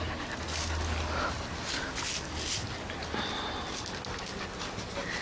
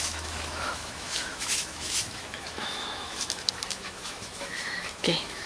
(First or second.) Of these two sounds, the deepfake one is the second